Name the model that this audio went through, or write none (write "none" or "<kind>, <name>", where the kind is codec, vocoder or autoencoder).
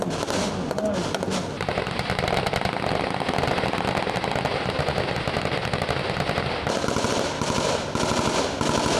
none